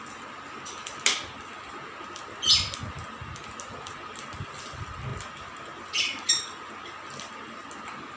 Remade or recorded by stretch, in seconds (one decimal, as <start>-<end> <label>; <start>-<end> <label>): 0.0-8.2 recorded